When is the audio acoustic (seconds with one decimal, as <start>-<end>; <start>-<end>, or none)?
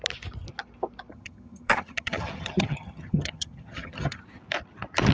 0.0-1.1; 4.2-5.1